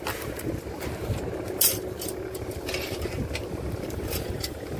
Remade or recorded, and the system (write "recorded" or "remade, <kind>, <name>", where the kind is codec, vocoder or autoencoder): remade, vocoder, BigVGAN v2